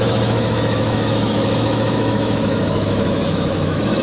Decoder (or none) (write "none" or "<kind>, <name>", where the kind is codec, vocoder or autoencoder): autoencoder, DAC-VAE